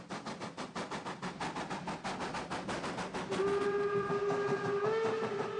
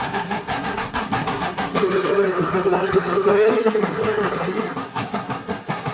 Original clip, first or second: first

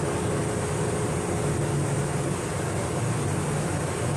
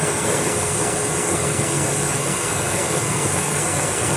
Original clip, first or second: first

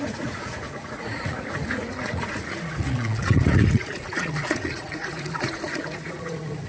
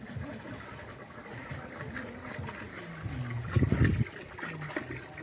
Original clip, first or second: second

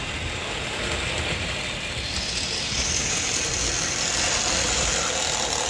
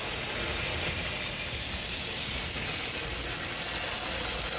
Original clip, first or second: second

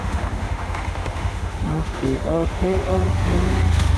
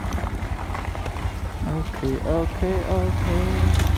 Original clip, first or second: second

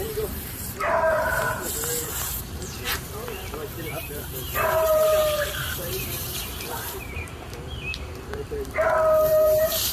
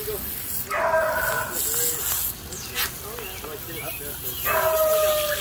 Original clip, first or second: second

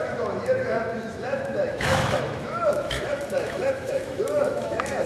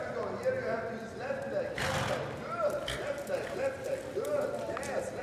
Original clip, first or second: second